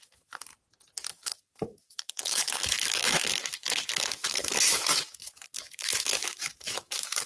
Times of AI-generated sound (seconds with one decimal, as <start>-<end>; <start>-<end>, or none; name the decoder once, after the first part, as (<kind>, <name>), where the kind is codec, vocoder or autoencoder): 0.0-0.5 (autoencoder, DAC-VAE); 1.1-7.3

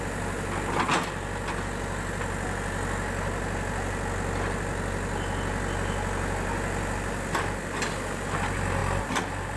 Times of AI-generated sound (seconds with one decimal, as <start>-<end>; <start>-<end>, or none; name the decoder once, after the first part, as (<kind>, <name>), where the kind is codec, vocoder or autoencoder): none

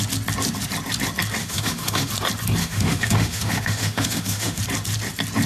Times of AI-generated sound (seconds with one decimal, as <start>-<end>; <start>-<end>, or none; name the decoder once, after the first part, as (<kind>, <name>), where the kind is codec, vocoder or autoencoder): 1.4-2.1 (autoencoder, DAC-VAE); 2.6-4.6